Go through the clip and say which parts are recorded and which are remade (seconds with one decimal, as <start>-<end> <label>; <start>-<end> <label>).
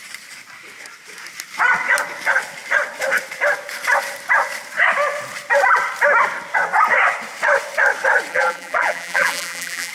0.0-8.3 recorded; 8.3-9.9 remade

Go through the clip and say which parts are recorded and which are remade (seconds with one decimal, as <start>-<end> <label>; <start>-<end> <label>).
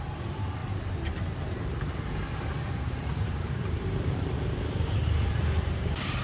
0.0-6.2 remade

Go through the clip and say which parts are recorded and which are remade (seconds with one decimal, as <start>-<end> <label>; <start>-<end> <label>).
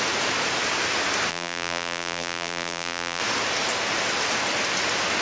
0.0-1.3 recorded; 1.3-3.2 remade; 3.2-5.2 recorded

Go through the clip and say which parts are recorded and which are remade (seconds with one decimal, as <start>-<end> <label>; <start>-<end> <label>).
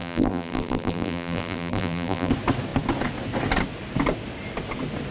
0.0-2.3 remade; 2.3-5.1 recorded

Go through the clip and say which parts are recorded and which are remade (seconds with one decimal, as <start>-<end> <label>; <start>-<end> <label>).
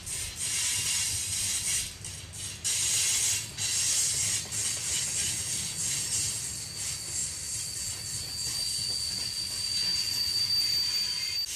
0.0-11.6 recorded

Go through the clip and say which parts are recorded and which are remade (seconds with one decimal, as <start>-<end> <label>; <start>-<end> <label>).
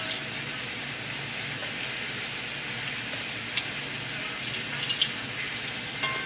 0.0-6.3 recorded